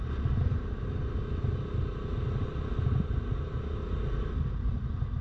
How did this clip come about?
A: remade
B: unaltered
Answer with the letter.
B